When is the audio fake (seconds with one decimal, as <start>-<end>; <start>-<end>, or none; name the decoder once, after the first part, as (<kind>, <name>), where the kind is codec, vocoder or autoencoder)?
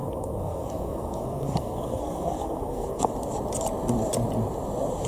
0.0-3.1 (codec, SNAC)